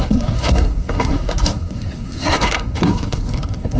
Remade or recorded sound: remade